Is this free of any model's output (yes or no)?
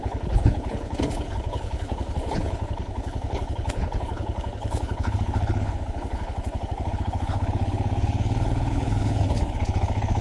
no